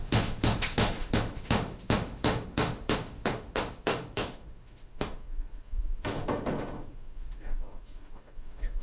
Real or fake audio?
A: fake